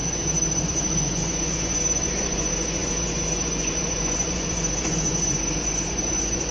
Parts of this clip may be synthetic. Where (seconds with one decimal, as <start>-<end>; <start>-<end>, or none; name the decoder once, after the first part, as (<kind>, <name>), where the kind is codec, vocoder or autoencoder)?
0.0-6.5 (vocoder, Vocos)